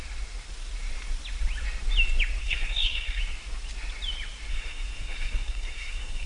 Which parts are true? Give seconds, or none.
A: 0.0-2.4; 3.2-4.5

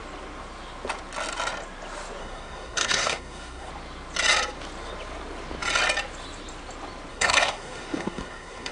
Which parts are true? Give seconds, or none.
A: 0.0-2.2; 3.7-7.1

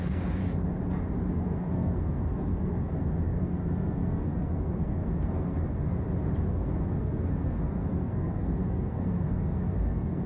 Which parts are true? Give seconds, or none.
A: 0.4-1.4; 5.9-6.5

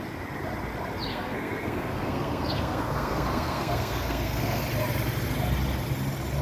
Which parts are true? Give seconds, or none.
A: 0.0-1.1; 4.6-6.4

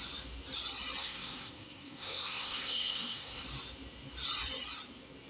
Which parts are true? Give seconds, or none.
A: 0.0-1.0; 3.4-5.3

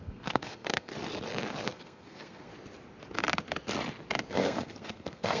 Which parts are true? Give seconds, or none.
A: 0.9-1.6; 2.5-4.3

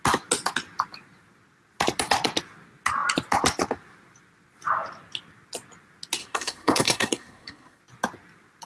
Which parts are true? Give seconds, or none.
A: 0.0-6.2; 7.8-8.7

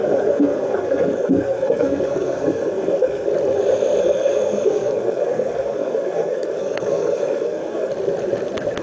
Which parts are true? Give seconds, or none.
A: 3.3-4.0; 7.9-8.8